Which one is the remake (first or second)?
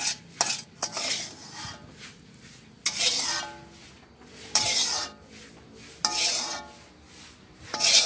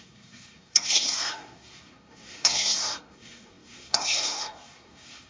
second